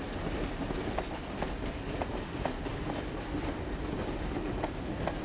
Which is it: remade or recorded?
recorded